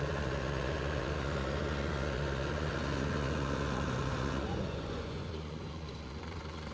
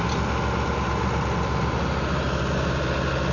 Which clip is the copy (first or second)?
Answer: first